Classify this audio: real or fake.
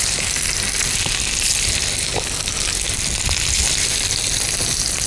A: real